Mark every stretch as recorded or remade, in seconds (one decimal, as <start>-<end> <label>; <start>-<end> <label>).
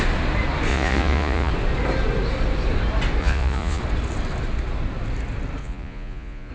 0.0-0.7 recorded; 0.7-1.5 remade; 1.5-3.2 recorded; 3.2-3.8 remade; 3.8-5.6 recorded; 5.6-6.5 remade